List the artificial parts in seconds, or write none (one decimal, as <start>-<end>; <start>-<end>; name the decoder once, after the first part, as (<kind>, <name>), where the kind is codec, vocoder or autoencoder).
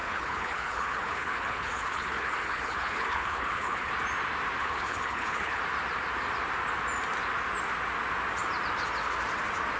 0.0-3.9 (codec, HILCodec); 4.6-5.6